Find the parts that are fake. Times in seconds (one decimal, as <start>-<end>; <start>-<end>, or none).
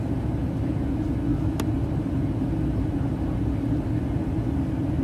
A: none